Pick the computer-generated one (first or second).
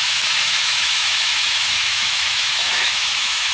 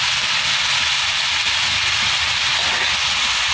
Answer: first